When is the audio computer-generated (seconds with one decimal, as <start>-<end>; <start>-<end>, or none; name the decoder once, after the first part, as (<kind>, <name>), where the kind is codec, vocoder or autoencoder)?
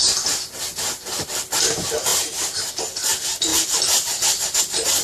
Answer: 2.1-2.7 (vocoder, BigVGAN v2)